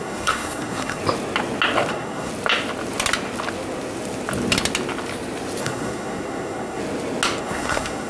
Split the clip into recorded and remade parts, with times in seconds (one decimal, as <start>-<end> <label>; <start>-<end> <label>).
0.0-1.0 remade; 1.0-1.9 recorded; 1.9-2.3 remade; 2.3-5.6 recorded; 5.6-6.8 remade; 6.8-7.4 recorded; 7.4-8.1 remade